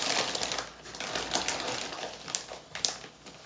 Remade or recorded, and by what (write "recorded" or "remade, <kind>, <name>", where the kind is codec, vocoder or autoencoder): recorded